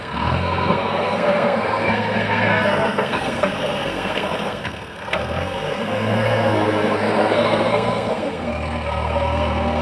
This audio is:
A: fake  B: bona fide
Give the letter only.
A